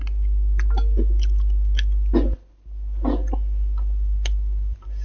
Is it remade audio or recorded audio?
recorded